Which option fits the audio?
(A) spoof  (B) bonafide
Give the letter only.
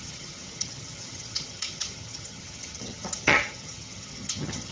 A